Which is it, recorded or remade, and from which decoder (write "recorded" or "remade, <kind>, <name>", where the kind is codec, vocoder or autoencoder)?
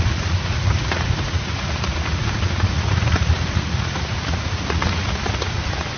remade, vocoder, Vocos